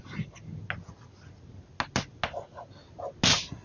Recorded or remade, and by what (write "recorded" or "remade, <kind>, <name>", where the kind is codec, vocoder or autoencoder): recorded